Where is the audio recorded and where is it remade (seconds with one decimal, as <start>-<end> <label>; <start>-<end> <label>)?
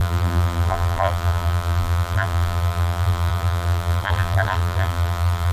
0.0-5.5 remade